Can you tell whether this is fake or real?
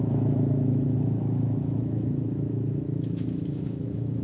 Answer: fake